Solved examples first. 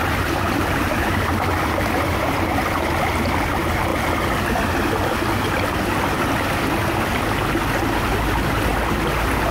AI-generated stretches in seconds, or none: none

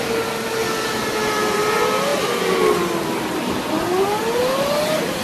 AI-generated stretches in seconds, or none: none

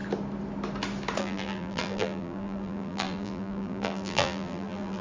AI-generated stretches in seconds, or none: 1.2-5.0 (vocoder, BigVGAN v2)

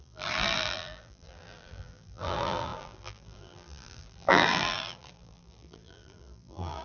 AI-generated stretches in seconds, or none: 0.0-6.8 (vocoder, BigVGAN v2)